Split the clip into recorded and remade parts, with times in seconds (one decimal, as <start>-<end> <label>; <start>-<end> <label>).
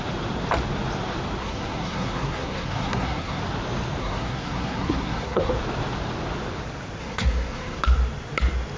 0.0-1.4 recorded; 1.4-3.4 remade; 3.4-4.0 recorded; 4.0-5.5 remade; 5.5-7.0 recorded; 7.0-7.8 remade; 7.8-8.8 recorded